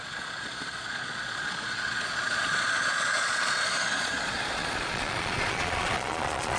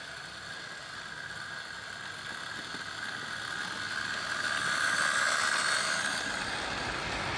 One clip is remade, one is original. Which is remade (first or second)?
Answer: first